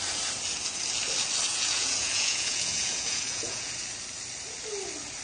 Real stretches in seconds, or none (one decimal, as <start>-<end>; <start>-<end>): 0.0-1.5; 3.7-5.2